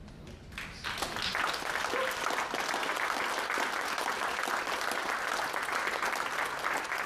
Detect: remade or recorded recorded